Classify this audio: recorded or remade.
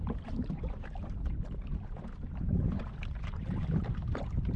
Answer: remade